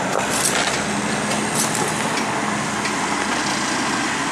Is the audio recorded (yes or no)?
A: yes